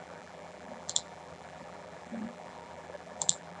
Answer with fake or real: fake